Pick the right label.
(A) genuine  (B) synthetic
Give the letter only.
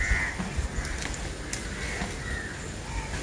A